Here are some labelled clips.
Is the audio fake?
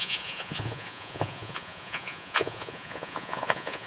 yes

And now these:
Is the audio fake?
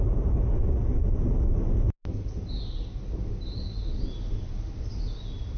no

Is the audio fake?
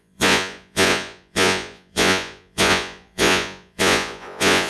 yes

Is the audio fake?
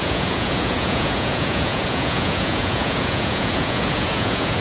yes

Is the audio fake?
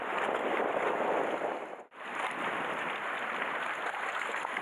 no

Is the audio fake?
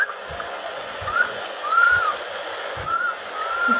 yes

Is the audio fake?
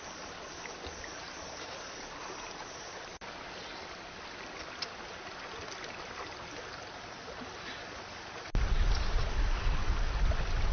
no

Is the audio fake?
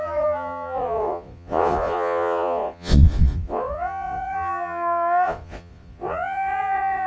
yes